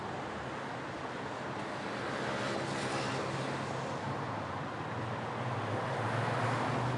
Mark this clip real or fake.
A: real